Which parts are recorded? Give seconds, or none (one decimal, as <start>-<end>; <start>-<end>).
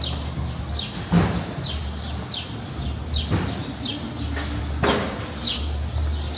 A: 0.0-6.4